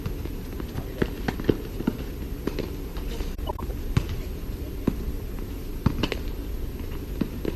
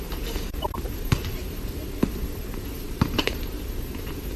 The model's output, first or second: second